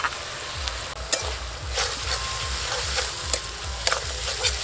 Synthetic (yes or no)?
no